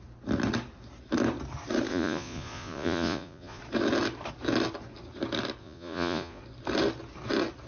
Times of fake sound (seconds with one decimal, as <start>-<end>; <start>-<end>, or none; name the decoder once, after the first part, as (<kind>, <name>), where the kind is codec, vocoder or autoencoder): 1.9-3.6 (vocoder, Vocos); 5.6-6.4